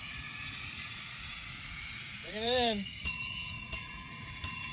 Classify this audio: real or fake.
fake